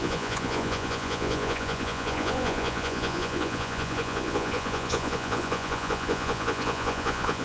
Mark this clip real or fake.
fake